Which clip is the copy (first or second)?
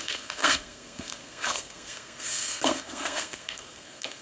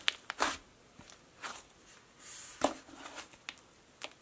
first